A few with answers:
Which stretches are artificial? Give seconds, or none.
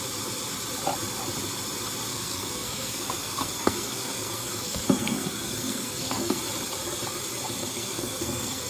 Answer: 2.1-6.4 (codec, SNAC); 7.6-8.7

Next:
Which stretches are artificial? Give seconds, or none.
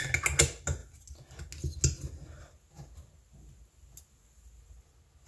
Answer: none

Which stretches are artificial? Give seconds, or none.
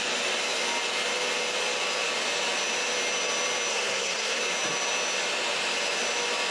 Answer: 3.7-4.4 (codec, SNAC)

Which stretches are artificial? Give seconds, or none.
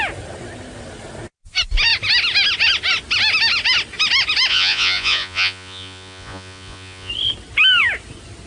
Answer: 4.5-7.1 (vocoder, Vocos)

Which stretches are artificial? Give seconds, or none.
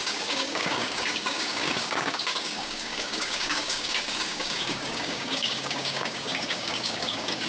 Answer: 0.0-7.5 (codec, DAC)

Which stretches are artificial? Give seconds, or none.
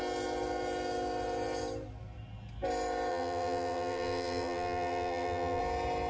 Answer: 3.1-5.6 (vocoder, BigVGAN v2)